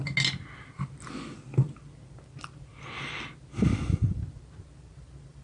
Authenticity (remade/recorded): recorded